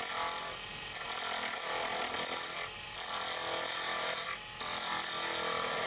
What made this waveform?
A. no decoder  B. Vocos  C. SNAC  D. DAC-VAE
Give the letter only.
A